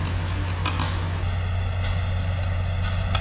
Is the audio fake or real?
real